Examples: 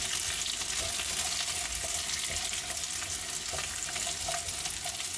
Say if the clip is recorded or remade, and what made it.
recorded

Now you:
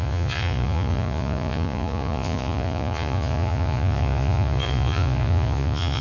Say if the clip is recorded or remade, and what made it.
remade, vocoder, Vocos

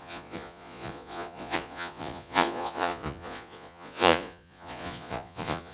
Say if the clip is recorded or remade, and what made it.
remade, vocoder, Vocos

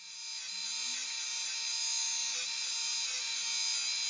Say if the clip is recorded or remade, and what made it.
recorded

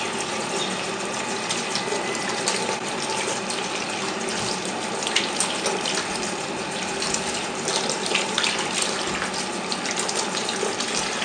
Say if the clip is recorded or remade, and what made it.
recorded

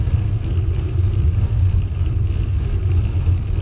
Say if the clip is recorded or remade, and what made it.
recorded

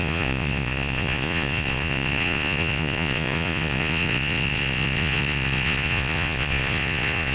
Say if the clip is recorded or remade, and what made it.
remade, vocoder, Vocos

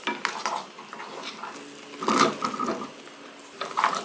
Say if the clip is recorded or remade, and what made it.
recorded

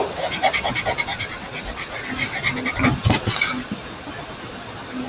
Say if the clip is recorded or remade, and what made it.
recorded